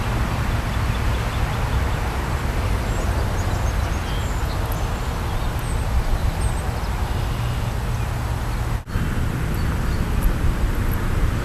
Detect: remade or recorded recorded